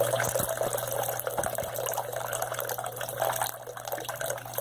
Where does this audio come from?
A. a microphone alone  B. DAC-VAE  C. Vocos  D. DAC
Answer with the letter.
A